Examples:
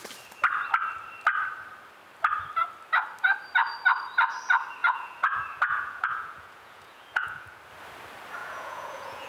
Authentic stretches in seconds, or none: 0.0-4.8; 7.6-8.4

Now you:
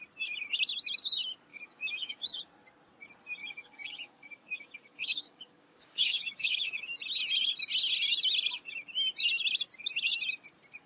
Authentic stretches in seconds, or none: 0.0-1.5; 2.4-3.4; 6.8-10.9

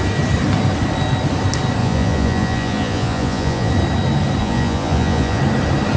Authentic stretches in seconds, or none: 0.0-1.8; 3.7-4.4; 5.4-6.0

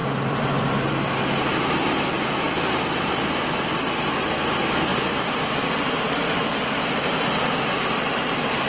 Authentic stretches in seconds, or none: 3.3-4.9; 7.2-8.7